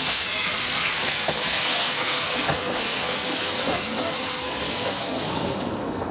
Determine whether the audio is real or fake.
fake